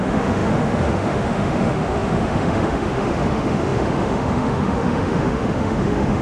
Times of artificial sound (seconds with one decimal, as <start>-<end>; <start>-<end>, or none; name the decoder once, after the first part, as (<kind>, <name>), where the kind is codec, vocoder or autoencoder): 0.0-6.2 (autoencoder, DAC-VAE)